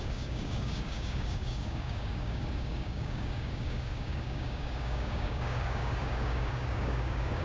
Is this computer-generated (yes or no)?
yes